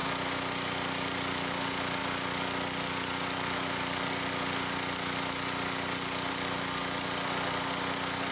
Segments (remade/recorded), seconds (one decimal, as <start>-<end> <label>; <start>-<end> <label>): 0.0-8.3 recorded

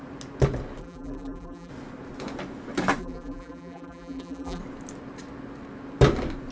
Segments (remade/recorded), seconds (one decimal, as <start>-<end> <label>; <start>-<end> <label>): 0.0-0.8 recorded; 0.8-1.7 remade; 1.7-3.0 recorded; 3.0-4.6 remade; 4.6-6.5 recorded

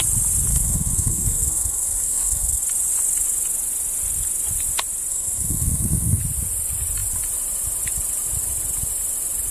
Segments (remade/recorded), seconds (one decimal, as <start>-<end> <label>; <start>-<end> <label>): 0.0-0.5 recorded; 0.5-2.6 remade; 2.6-5.1 recorded; 5.1-6.2 remade; 6.2-9.5 recorded

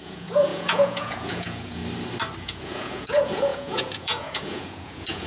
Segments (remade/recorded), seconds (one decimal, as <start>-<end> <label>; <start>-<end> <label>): 0.0-1.8 remade; 1.8-2.4 recorded; 2.4-5.3 remade

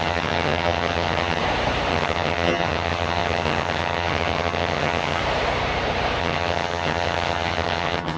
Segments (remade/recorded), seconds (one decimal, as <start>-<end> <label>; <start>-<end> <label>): 0.0-1.4 remade; 1.4-1.9 recorded; 1.9-5.2 remade; 5.2-6.2 recorded; 6.2-8.2 remade

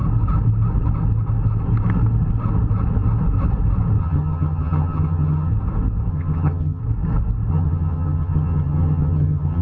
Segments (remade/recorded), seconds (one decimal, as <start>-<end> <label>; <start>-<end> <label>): 0.0-4.0 recorded; 4.0-5.5 remade; 5.5-6.1 recorded; 6.1-6.8 remade; 6.8-7.5 recorded; 7.5-9.6 remade